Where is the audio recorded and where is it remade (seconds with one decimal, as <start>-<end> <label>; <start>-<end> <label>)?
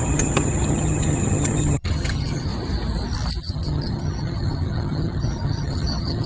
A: 0.0-2.5 remade; 2.5-3.4 recorded; 3.4-6.3 remade